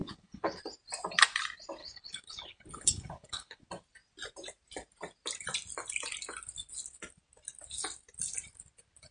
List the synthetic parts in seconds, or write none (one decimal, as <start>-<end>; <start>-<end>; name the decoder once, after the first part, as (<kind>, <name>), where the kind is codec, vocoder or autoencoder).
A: 0.0-0.6 (codec, HILCodec); 1.8-3.6